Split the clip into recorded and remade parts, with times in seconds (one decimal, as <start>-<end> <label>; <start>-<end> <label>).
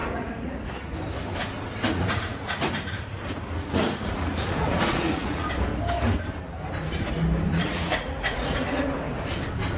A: 0.0-0.7 remade; 0.7-1.9 recorded; 1.9-5.5 remade; 5.5-7.5 recorded; 7.5-8.9 remade; 8.9-9.8 recorded